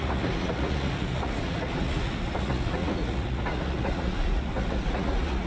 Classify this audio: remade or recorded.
remade